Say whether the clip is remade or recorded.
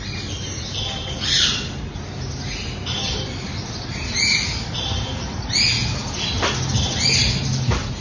recorded